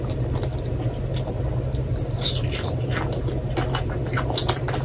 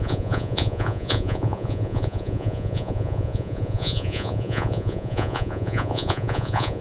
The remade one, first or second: second